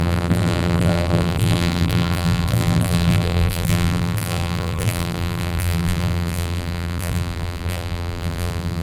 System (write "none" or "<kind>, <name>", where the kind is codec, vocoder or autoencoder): vocoder, BigVGAN v2